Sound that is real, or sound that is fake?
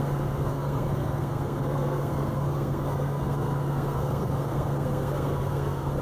fake